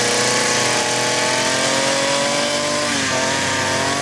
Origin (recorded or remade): recorded